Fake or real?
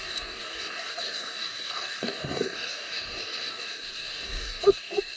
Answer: fake